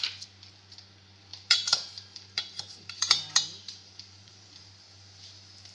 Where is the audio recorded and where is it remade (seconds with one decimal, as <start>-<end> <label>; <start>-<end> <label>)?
0.0-1.3 recorded; 1.3-4.7 remade; 4.7-5.7 recorded